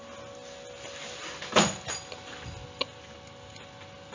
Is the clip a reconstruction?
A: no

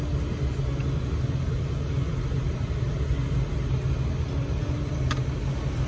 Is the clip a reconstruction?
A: no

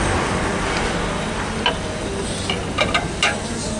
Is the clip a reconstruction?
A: no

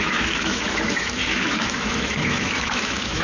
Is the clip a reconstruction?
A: yes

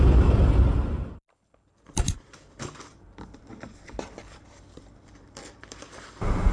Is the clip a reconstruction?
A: yes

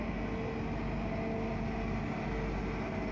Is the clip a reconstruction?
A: no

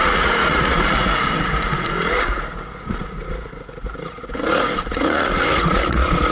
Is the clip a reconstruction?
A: yes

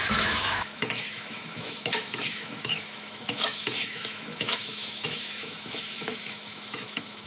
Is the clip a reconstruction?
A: yes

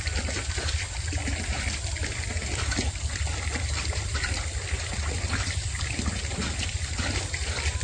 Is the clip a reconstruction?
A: no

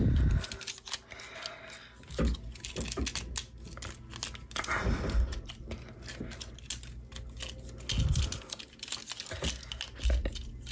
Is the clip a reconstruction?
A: no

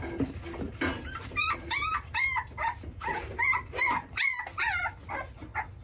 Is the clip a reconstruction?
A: no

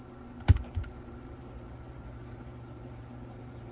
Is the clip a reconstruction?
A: yes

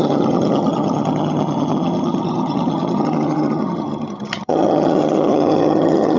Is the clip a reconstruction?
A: yes